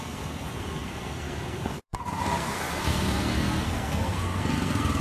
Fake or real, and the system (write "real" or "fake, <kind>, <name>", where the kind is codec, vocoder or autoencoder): fake, codec, SNAC